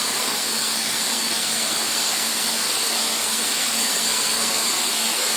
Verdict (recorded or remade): remade